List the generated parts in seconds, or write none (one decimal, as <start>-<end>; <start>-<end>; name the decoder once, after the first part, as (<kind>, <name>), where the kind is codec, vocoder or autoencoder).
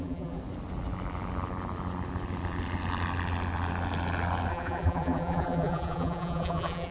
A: 0.0-0.4 (vocoder, BigVGAN v2); 4.5-6.9